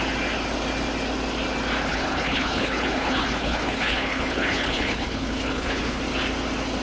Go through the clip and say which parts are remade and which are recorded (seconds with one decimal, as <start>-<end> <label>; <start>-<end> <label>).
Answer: 0.0-1.9 recorded; 1.9-6.0 remade; 6.0-6.8 recorded